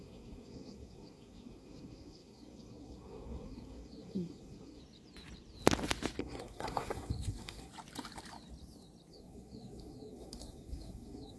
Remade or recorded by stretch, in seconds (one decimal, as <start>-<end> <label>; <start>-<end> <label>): 0.0-4.8 remade; 4.8-6.2 recorded; 6.2-7.7 remade; 7.7-9.1 recorded; 9.1-11.4 remade